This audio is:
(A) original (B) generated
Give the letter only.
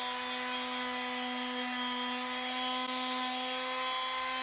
A